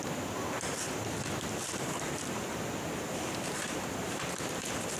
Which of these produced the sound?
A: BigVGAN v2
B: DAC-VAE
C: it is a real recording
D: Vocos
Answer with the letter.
A